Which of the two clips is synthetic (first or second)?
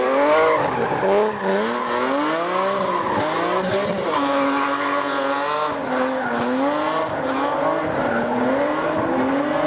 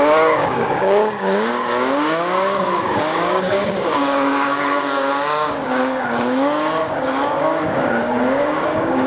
second